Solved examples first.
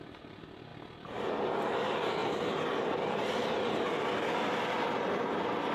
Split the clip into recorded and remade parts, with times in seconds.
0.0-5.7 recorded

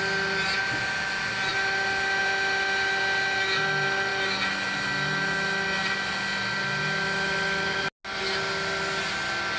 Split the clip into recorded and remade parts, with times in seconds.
0.0-9.6 recorded

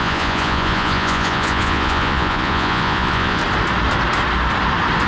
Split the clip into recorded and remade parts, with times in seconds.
0.0-3.4 remade; 3.4-5.1 recorded